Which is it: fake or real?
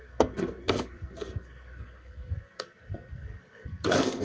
fake